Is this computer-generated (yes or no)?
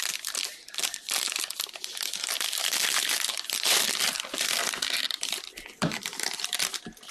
yes